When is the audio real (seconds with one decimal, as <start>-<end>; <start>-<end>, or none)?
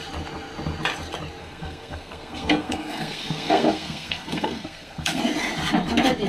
0.0-1.4; 5.2-6.3